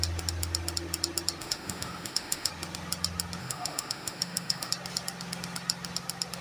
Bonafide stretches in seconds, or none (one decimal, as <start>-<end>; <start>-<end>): 0.0-1.4; 2.5-3.4; 4.7-6.4

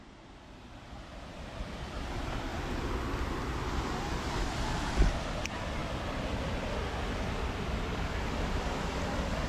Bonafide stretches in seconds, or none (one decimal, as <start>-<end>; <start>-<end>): 0.0-9.5

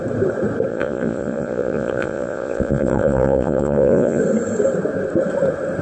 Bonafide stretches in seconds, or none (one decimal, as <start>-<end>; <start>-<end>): 0.0-0.7; 4.2-5.8

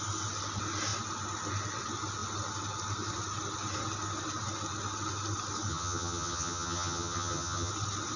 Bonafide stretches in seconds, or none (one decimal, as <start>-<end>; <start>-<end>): 0.0-5.7; 7.7-8.2

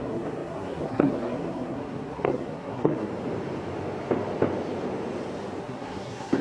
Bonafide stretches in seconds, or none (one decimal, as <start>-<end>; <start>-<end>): 3.1-5.6

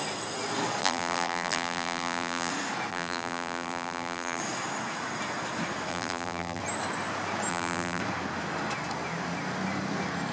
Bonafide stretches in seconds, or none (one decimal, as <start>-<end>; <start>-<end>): 0.0-0.8; 2.5-2.9; 4.4-5.9; 6.6-7.5; 8.0-10.3